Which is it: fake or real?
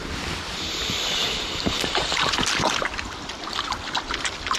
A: real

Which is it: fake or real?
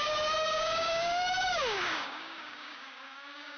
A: fake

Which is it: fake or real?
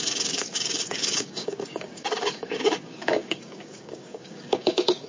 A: fake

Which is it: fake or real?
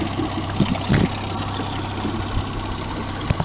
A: real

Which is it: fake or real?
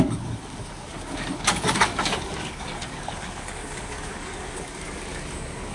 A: fake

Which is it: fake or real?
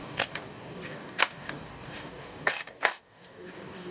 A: fake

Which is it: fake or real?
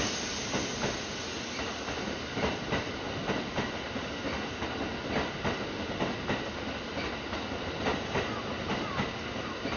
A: real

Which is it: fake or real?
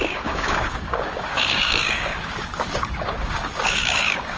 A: fake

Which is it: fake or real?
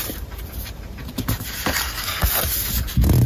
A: real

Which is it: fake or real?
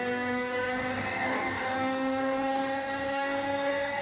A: fake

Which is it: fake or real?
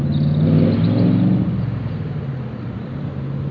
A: real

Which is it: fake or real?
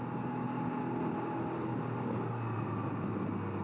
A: real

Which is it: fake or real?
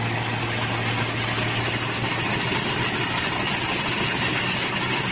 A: real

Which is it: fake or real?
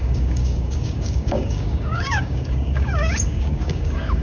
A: fake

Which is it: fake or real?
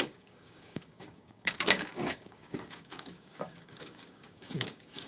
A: fake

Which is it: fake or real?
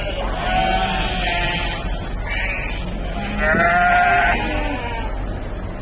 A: real